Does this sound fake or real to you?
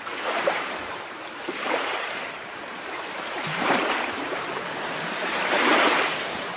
fake